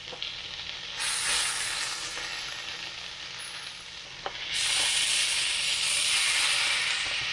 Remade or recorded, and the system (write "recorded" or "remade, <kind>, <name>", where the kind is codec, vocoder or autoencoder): recorded